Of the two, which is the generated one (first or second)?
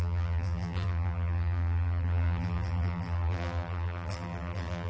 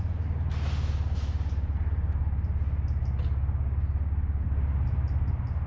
first